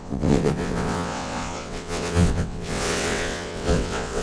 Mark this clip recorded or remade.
remade